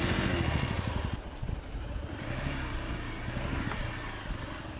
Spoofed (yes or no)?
no